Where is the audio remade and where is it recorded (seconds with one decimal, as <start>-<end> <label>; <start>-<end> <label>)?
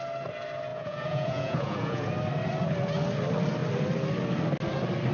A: 0.0-0.7 recorded; 0.7-2.1 remade; 2.1-5.1 recorded